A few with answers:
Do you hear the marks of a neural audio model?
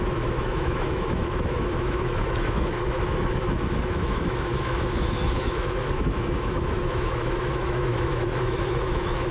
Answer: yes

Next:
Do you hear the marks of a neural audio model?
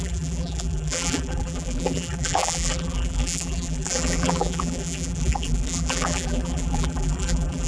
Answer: yes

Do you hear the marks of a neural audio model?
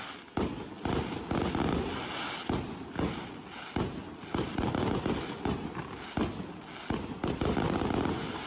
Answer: no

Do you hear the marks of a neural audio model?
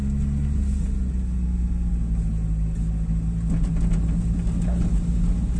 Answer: no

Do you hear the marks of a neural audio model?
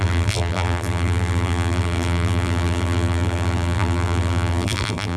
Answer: yes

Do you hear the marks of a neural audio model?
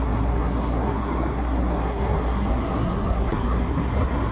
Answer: yes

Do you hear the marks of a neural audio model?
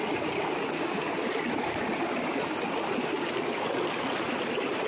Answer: no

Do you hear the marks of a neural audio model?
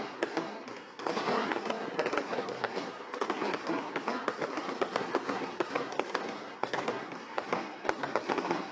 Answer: yes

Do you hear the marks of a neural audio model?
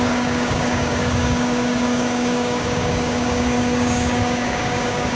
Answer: yes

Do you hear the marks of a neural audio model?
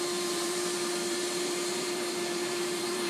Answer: yes